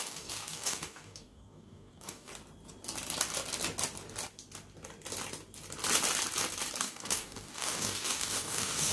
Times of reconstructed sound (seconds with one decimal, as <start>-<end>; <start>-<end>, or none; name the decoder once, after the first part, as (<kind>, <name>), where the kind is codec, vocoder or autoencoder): 0.0-2.3 (codec, DAC); 6.8-8.9

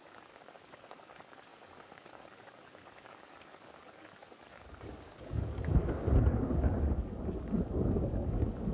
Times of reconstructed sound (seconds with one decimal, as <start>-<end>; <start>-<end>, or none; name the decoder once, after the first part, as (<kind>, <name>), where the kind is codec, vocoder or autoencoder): 0.0-8.7 (codec, DAC)

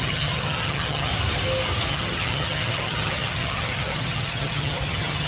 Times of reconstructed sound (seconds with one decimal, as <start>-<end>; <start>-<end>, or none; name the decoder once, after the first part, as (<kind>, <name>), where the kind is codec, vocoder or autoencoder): 0.0-1.1 (vocoder, HiFi-GAN); 1.9-5.3

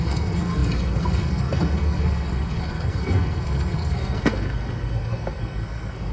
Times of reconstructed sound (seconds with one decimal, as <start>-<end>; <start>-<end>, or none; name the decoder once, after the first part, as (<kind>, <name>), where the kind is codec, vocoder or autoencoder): 0.0-6.1 (codec, SNAC)

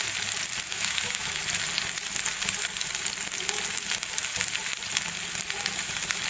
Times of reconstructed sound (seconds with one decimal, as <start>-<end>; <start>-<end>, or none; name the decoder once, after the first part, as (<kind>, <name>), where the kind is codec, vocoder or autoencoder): 0.7-1.4 (autoencoder, DAC-VAE)